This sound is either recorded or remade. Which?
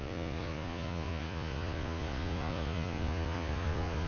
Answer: remade